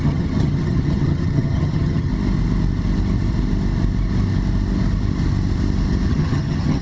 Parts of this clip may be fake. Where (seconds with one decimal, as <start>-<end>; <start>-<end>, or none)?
0.0-2.1; 6.1-6.8